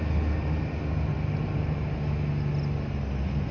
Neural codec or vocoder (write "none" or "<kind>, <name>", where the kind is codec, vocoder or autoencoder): none